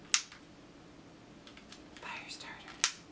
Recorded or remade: recorded